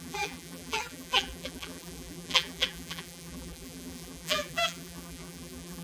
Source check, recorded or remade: remade